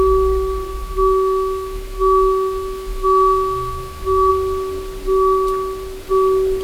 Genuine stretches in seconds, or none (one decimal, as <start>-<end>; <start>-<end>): 0.0-0.7; 4.3-6.6